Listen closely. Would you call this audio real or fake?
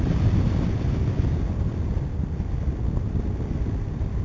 real